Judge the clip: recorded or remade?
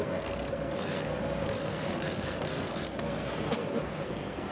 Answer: remade